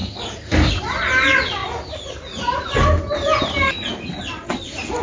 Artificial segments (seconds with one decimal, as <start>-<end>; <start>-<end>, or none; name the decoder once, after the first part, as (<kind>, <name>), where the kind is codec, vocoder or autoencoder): 0.0-0.7 (codec, DAC)